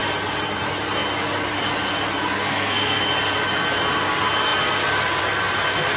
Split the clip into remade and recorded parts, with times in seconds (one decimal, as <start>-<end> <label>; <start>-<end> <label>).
0.0-2.2 recorded; 2.2-3.0 remade; 3.0-6.0 recorded